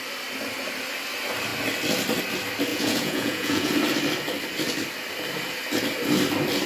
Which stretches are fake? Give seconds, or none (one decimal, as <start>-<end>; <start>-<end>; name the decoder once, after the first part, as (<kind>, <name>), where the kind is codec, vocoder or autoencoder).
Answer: 2.7-3.7 (vocoder, Vocos)